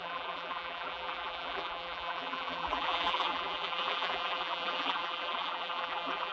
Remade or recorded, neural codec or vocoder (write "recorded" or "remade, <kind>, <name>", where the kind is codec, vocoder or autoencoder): remade, vocoder, BigVGAN v2